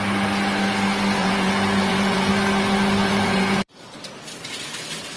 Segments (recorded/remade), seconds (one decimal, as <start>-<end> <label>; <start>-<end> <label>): 0.0-1.2 recorded; 1.2-2.3 remade; 2.3-3.0 recorded; 3.0-3.7 remade; 3.7-5.2 recorded